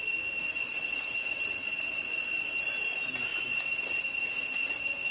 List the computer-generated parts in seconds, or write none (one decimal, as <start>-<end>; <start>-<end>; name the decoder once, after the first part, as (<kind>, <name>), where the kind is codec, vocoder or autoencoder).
0.7-2.0 (vocoder, WaveNeXt)